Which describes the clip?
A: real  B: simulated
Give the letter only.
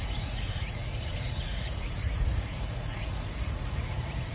B